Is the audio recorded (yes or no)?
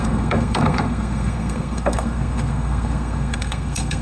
no